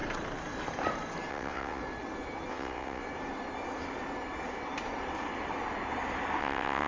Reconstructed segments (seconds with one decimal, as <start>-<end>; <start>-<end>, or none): 1.3-1.8; 2.5-3.0; 6.4-6.9